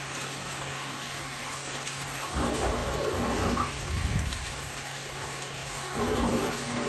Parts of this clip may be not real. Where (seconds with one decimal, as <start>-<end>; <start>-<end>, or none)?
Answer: 0.0-6.9